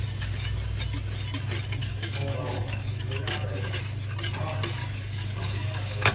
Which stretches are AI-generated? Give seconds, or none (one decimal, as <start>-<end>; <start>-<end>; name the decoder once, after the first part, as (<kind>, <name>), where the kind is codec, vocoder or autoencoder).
1.8-3.8 (codec, DAC); 4.8-6.1